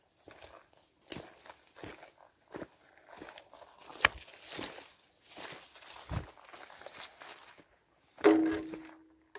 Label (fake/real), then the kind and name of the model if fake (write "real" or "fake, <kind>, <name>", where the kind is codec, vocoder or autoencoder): real